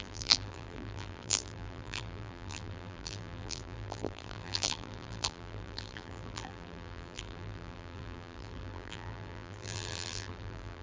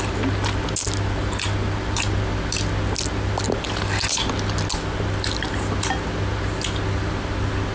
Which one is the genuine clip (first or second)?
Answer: second